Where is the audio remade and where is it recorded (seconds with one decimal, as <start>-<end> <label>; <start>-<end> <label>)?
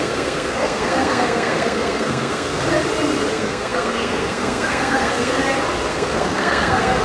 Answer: 0.0-2.6 remade; 2.6-3.3 recorded; 3.3-5.4 remade; 5.4-5.9 recorded; 5.9-7.0 remade